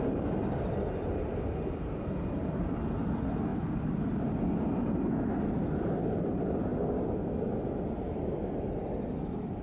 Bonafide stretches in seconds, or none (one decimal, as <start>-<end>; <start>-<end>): 0.0-9.6